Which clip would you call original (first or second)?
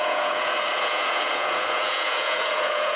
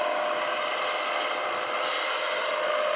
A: second